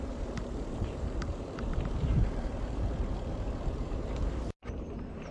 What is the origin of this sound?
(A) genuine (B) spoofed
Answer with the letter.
B